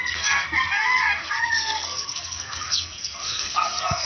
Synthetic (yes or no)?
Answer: yes